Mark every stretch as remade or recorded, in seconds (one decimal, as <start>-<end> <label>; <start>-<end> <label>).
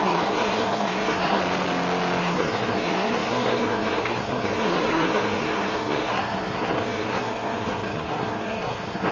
0.0-1.4 remade; 1.4-2.2 recorded; 2.2-9.1 remade